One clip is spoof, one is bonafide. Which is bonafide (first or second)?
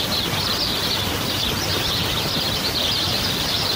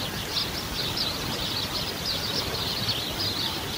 second